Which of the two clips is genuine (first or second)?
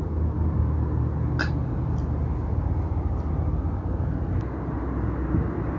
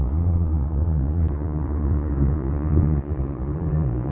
first